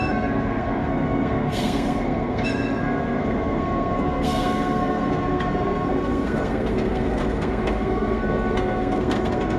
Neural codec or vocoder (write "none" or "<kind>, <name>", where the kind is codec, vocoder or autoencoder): codec, SNAC